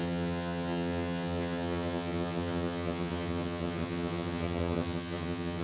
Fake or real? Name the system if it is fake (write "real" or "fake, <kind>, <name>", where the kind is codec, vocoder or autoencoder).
fake, vocoder, HiFi-GAN